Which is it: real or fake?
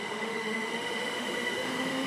fake